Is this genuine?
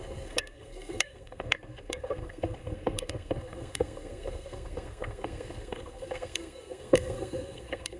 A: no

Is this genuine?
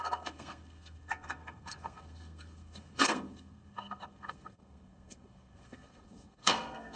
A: no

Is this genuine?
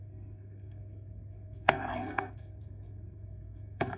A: no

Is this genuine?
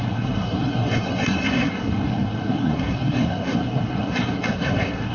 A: no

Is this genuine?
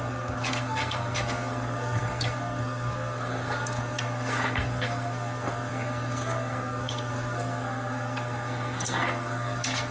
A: no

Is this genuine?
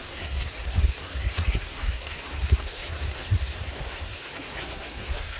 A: no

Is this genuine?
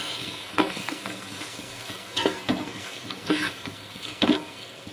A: no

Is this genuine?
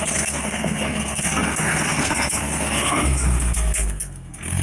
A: no